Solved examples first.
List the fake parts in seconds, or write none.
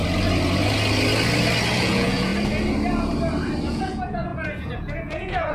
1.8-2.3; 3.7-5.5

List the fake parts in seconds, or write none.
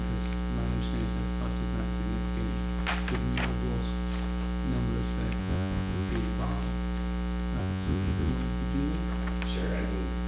5.4-6.1; 7.6-8.3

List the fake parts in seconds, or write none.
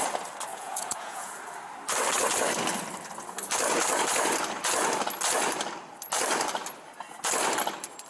0.5-1.3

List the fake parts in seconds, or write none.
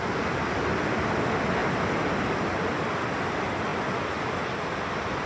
none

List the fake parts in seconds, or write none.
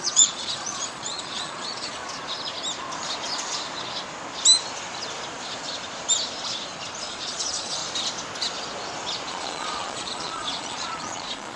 0.0-2.0; 7.0-7.8; 9.3-11.6